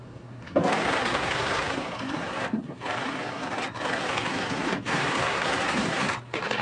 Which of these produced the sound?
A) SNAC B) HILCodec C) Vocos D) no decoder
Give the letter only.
A